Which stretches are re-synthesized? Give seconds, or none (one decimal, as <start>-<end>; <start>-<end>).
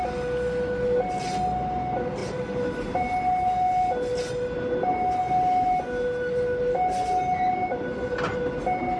none